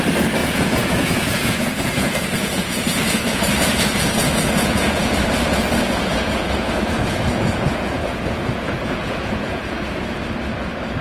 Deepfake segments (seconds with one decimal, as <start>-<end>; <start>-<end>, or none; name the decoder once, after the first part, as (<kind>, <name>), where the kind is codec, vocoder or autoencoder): 0.4-3.4 (vocoder, Vocos); 4.2-5.1; 5.5-10.2